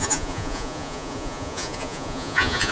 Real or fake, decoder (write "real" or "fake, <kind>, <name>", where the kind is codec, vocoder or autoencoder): fake, vocoder, Vocos